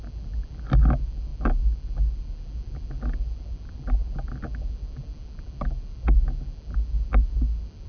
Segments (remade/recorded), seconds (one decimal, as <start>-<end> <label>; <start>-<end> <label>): 0.0-7.9 recorded